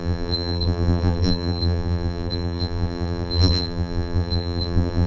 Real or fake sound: fake